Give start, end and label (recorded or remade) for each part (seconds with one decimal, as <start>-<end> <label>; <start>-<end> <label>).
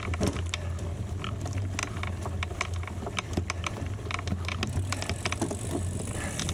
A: 0.0-6.5 recorded